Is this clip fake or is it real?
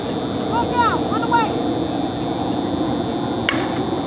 real